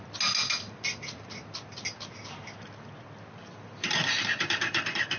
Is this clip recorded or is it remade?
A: recorded